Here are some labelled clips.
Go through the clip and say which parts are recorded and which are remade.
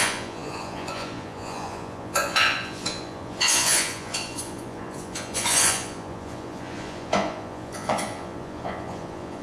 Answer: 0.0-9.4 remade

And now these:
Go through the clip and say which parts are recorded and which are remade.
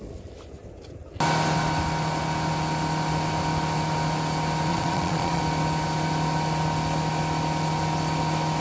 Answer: 0.0-4.7 recorded; 4.7-5.4 remade; 5.4-8.6 recorded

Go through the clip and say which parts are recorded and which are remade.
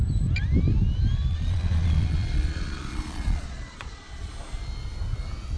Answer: 0.0-1.3 recorded; 1.3-4.3 remade; 4.3-5.6 recorded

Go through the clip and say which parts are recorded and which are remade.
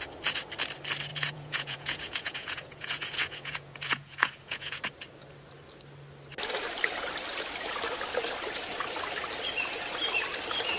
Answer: 0.0-1.1 recorded; 1.1-4.8 remade; 4.8-10.8 recorded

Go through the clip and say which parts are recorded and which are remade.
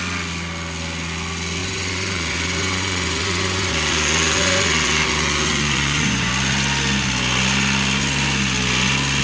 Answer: 0.0-1.6 recorded; 1.6-6.3 remade; 6.3-9.2 recorded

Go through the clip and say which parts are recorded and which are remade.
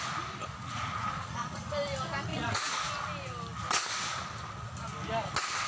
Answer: 0.0-0.4 recorded; 0.4-1.6 remade; 1.6-2.3 recorded; 2.3-2.9 remade; 2.9-5.7 recorded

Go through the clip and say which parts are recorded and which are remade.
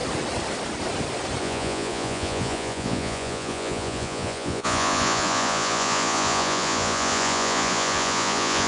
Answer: 0.0-1.4 recorded; 1.4-8.7 remade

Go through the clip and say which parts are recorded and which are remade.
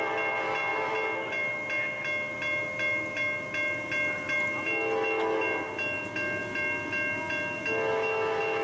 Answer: 0.0-8.6 recorded